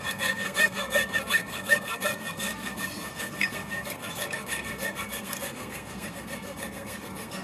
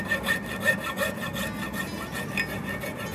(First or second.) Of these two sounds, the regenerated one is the first